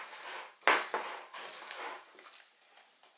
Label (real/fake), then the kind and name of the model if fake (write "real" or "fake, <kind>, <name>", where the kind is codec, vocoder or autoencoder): real